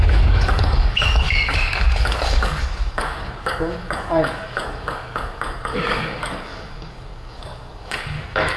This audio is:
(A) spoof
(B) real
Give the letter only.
A